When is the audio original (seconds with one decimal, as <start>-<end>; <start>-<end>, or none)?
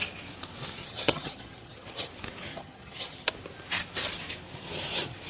0.0-0.8; 2.1-2.5; 3.3-5.3